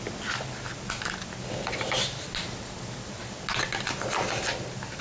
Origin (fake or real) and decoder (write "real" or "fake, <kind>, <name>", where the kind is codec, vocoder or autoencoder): real